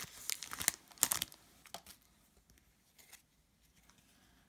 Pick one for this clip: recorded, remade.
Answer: recorded